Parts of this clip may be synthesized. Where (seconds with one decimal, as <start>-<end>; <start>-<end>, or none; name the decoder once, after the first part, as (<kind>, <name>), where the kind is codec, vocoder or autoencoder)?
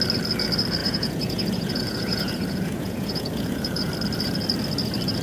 0.8-3.9 (vocoder, Vocos)